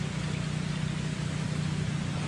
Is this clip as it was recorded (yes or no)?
yes